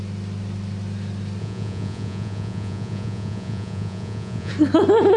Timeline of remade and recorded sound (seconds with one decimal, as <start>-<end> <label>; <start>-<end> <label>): 0.0-1.4 recorded; 1.4-4.5 remade; 4.5-5.2 recorded